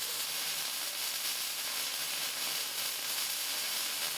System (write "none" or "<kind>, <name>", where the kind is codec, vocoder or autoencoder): vocoder, BigVGAN v2